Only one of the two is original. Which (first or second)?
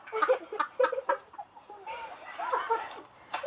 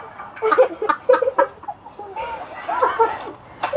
second